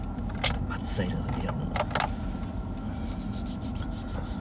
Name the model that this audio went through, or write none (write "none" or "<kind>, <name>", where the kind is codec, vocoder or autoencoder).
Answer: none